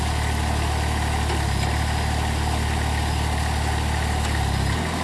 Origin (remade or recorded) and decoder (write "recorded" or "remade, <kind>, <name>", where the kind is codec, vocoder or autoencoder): recorded